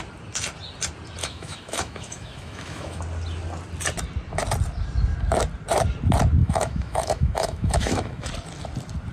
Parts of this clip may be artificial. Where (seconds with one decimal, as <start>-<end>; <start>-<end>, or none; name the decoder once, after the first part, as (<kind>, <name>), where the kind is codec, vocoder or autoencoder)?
1.2-3.0 (autoencoder, DAC-VAE); 6.4-8.3